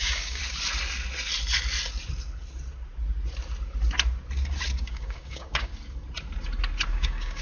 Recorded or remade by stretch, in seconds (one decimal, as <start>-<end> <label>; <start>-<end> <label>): 0.0-0.4 remade; 0.4-4.8 recorded; 4.8-5.7 remade; 5.7-6.9 recorded; 6.9-7.4 remade